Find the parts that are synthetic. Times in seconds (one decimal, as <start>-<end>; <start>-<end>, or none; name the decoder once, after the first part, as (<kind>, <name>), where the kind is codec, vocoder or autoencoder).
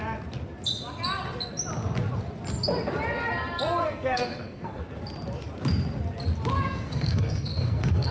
3.8-4.8 (codec, SNAC); 6.6-8.1